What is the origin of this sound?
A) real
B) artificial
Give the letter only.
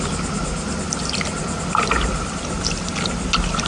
A